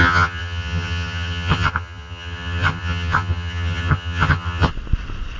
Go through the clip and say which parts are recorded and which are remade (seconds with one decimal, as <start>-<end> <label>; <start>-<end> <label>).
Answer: 0.0-4.7 remade; 4.7-5.4 recorded

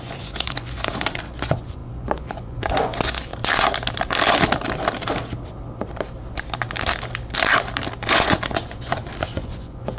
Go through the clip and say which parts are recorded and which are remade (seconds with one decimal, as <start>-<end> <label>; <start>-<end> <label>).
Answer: 0.0-3.3 remade; 3.3-8.1 recorded; 8.1-10.0 remade

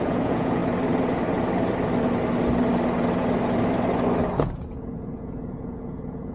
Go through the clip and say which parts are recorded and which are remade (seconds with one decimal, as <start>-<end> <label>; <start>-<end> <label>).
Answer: 0.0-0.6 remade; 0.6-4.4 recorded; 4.4-6.3 remade

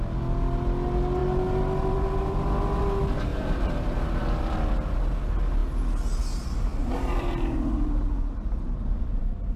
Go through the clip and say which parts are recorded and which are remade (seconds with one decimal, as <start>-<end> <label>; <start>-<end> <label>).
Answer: 0.0-3.3 recorded; 3.3-4.0 remade; 4.0-6.8 recorded; 6.8-8.8 remade; 8.8-9.6 recorded

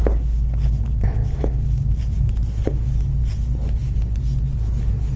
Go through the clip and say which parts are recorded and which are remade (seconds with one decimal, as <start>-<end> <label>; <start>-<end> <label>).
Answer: 0.0-5.2 recorded